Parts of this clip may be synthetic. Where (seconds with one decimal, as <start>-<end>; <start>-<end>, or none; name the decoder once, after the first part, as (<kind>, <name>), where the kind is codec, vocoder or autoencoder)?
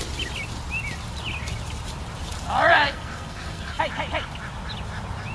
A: 2.7-3.8 (codec, SNAC)